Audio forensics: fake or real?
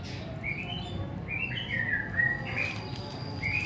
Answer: real